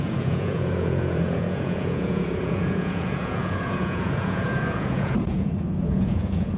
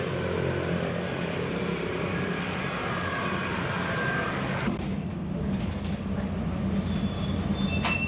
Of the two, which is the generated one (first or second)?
first